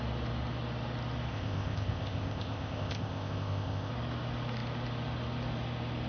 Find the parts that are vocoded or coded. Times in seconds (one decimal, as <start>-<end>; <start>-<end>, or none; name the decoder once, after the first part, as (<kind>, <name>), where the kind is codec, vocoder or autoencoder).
1.3-3.9 (codec, ZipCodec)

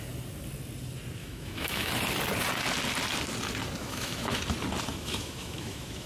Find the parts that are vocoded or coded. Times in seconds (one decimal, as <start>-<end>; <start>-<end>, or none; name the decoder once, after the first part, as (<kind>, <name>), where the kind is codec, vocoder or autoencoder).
1.2-1.9 (autoencoder, DAC-VAE); 3.8-4.4; 4.9-6.1